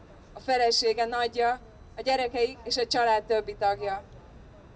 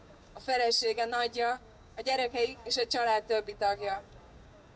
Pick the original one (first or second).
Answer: first